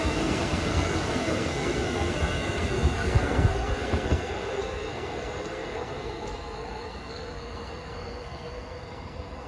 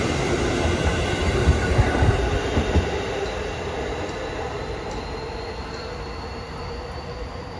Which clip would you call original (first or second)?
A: second